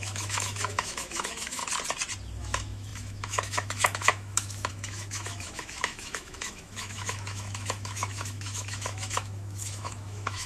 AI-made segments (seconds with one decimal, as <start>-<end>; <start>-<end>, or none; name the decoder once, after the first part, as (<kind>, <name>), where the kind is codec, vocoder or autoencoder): 0.0-1.6 (autoencoder, DAC-VAE); 2.4-10.5